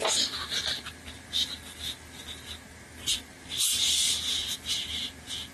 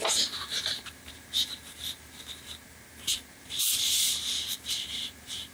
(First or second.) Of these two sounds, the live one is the first